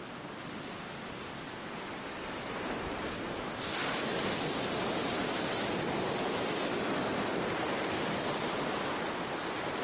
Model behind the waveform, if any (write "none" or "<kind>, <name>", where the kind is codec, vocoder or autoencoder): none